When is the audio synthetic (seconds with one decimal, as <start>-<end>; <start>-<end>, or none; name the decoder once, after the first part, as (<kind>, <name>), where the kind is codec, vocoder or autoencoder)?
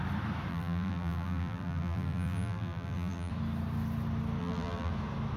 0.5-3.3 (vocoder, BigVGAN v2); 4.4-4.9